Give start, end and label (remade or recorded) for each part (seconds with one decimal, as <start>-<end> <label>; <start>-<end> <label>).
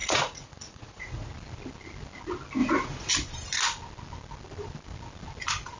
0.0-1.3 remade; 1.3-2.6 recorded; 2.6-3.1 remade; 3.1-5.8 recorded